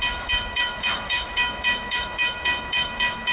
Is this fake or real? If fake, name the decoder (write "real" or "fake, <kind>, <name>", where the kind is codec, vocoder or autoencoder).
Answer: fake, autoencoder, DAC-VAE